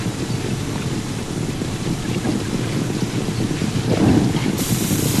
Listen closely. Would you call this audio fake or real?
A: real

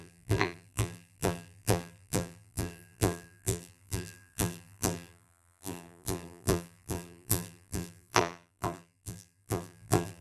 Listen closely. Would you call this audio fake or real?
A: fake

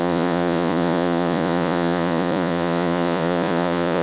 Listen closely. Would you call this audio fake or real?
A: fake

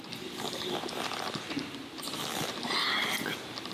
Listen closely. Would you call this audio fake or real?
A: real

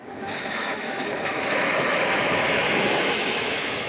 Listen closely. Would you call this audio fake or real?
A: fake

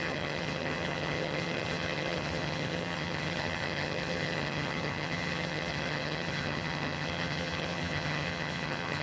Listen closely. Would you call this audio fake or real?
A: fake